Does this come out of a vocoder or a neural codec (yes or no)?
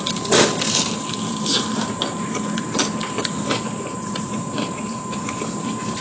yes